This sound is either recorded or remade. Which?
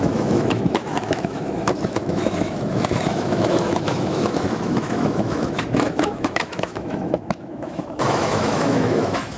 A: remade